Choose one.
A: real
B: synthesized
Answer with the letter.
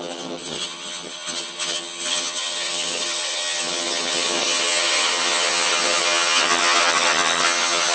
B